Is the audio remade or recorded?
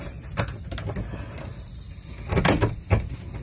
recorded